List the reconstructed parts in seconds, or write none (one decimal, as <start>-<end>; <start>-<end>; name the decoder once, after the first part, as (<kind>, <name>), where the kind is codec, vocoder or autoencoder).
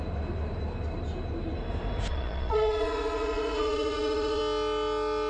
2.1-4.4 (vocoder, Vocos)